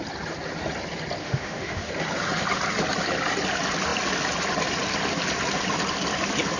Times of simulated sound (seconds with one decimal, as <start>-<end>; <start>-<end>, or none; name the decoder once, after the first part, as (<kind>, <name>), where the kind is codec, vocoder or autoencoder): 1.2-1.9 (autoencoder, DAC-VAE)